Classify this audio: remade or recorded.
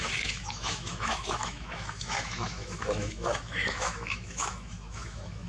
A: remade